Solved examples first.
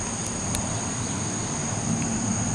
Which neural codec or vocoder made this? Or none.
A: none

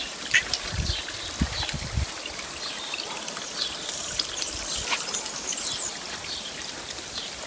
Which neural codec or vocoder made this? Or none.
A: none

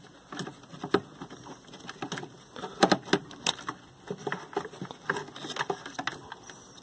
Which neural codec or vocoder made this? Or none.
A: none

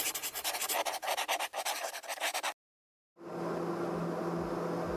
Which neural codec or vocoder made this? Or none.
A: none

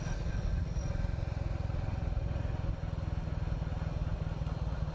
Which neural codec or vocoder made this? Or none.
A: none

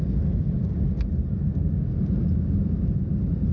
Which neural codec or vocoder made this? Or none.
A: none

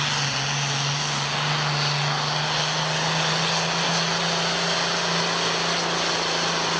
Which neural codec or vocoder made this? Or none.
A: none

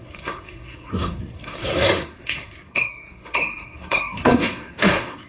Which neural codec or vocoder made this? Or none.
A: codec, SNAC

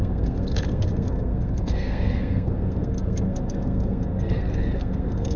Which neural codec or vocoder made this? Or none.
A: codec, SNAC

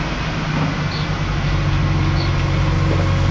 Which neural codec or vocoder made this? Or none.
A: none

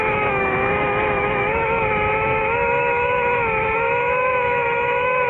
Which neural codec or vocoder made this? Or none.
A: autoencoder, DAC-VAE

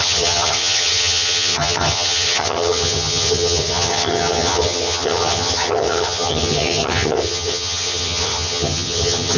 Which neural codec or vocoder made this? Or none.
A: vocoder, HiFi-GAN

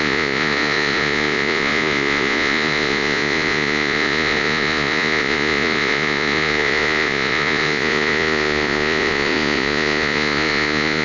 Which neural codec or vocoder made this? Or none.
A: vocoder, Vocos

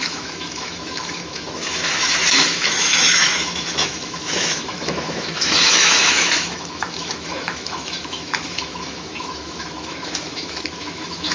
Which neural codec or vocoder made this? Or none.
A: autoencoder, DAC-VAE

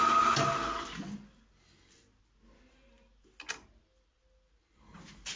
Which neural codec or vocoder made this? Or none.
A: none